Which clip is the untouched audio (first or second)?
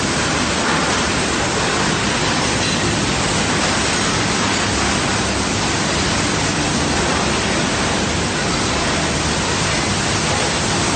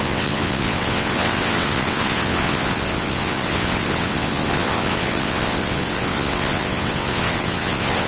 first